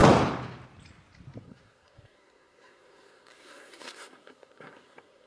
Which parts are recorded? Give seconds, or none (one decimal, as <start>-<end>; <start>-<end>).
0.0-1.4